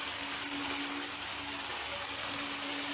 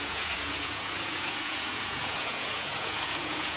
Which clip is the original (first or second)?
first